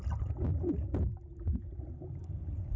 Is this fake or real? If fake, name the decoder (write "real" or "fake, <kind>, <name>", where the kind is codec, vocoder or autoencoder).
real